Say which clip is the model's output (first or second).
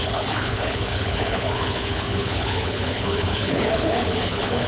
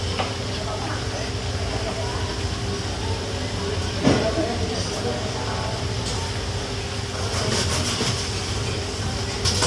first